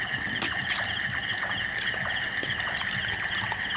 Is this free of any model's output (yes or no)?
yes